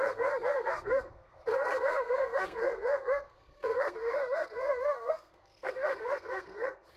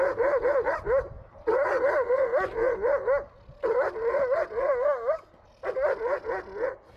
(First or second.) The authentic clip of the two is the second